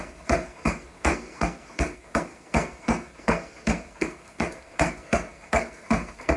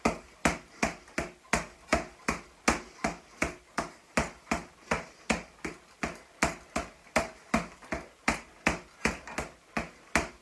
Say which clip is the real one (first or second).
second